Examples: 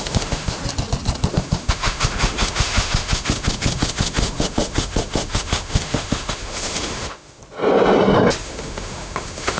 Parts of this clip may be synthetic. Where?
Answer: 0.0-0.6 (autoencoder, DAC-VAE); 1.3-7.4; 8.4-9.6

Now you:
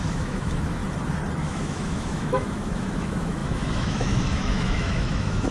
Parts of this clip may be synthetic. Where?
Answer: 0.0-0.8 (autoencoder, DAC-VAE); 1.4-5.5